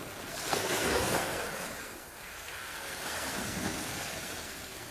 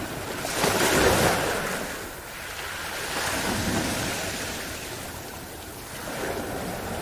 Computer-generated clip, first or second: first